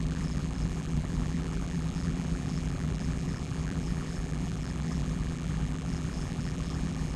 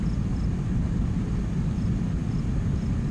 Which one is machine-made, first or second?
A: first